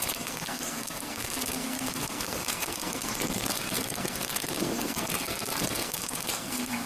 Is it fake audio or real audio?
fake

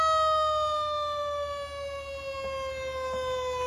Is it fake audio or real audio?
real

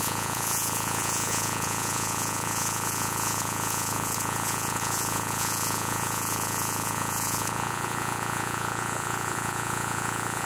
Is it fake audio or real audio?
fake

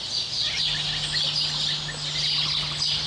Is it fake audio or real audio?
real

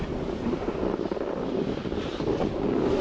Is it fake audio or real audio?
real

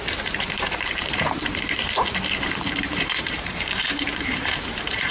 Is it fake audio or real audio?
fake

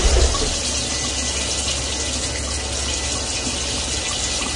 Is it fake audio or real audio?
real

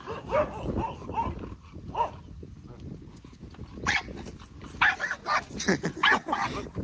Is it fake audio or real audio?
real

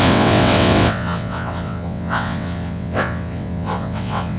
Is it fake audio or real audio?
fake